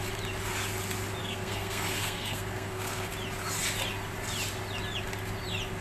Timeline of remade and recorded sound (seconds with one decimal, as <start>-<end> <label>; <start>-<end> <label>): 0.0-1.2 recorded; 1.2-3.1 remade; 3.1-5.8 recorded